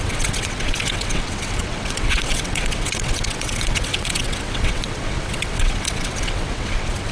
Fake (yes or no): yes